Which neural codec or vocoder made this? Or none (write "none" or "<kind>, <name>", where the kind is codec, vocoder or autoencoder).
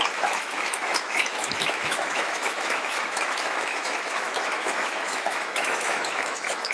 autoencoder, DAC-VAE